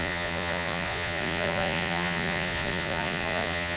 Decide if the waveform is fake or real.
fake